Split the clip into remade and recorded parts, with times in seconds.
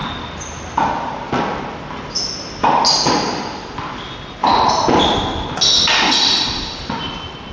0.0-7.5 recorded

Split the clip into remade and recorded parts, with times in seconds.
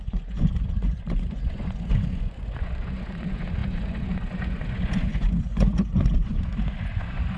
0.0-7.4 remade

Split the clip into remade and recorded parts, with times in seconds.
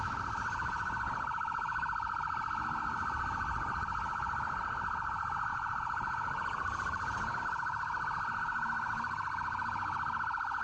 0.0-5.5 recorded; 5.5-7.4 remade; 7.4-10.6 recorded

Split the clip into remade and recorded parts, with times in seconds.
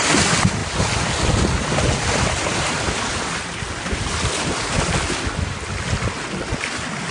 0.0-7.1 recorded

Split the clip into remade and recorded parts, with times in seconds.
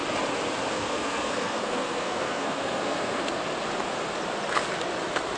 0.0-0.7 recorded; 0.7-3.4 remade; 3.4-5.4 recorded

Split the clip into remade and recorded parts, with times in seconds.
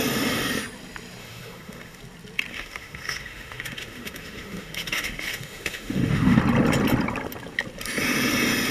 0.0-1.2 recorded; 1.2-2.0 remade; 2.0-2.5 recorded; 2.5-6.4 remade; 6.4-8.7 recorded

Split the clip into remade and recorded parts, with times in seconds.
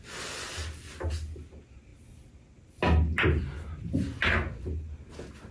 0.0-5.5 recorded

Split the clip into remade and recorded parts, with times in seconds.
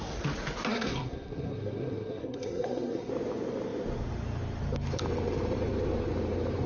0.0-0.7 recorded; 0.7-3.1 remade; 3.1-6.7 recorded